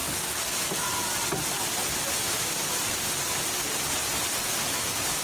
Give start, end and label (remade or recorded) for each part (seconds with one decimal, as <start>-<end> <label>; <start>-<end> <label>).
0.0-5.2 recorded